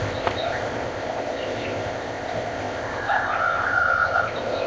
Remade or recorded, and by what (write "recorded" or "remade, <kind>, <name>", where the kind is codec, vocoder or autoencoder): remade, codec, ZipCodec